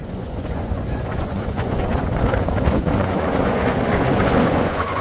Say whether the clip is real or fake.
fake